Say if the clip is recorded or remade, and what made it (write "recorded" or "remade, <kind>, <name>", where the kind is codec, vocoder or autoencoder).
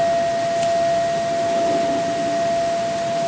recorded